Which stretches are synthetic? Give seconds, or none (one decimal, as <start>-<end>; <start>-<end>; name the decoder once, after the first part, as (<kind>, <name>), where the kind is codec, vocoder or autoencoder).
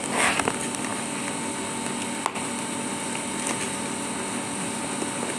none